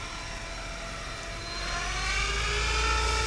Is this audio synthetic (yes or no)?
no